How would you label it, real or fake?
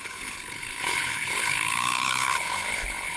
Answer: fake